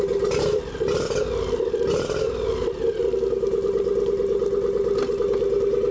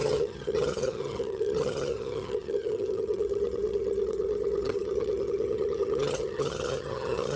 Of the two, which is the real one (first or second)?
first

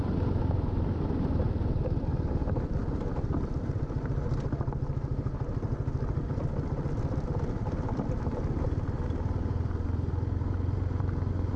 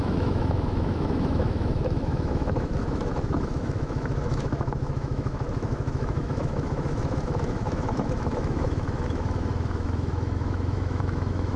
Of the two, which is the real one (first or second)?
first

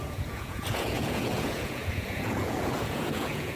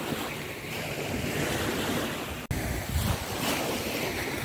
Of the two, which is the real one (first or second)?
second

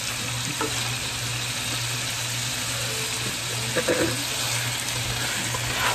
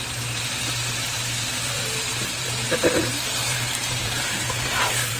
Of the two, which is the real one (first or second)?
first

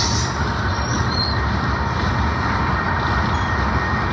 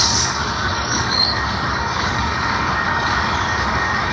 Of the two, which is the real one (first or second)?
first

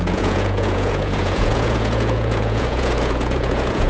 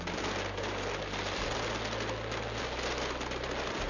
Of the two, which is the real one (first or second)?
second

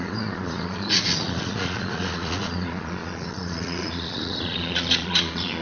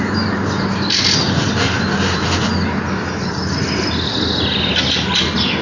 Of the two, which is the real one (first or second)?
second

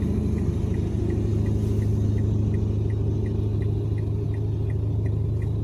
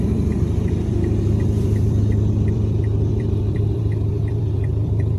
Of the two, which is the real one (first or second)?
first